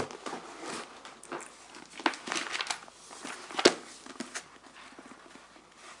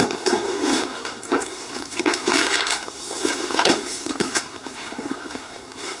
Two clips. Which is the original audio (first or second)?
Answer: first